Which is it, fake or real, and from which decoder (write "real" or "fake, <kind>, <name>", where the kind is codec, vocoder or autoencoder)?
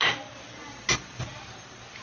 real